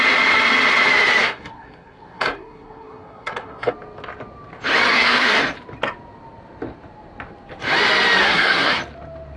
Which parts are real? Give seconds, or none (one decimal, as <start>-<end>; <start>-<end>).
0.0-1.2; 3.7-4.9; 5.4-8.2; 8.8-9.4